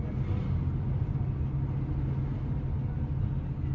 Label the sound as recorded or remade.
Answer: recorded